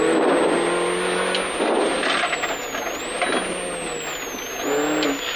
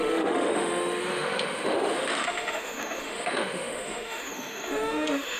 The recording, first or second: first